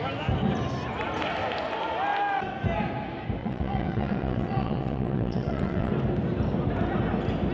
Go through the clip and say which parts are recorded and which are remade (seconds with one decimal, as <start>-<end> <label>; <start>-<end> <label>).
0.0-3.4 recorded; 3.4-5.9 remade; 5.9-7.5 recorded